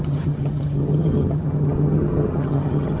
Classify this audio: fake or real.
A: fake